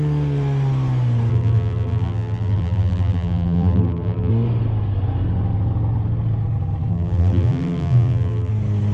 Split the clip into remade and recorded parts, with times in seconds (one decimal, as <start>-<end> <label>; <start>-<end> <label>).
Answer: 0.0-1.3 recorded; 1.3-4.3 remade; 4.3-6.9 recorded; 6.9-8.5 remade; 8.5-8.9 recorded